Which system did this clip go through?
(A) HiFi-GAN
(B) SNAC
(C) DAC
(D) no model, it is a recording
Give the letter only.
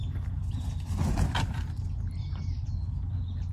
D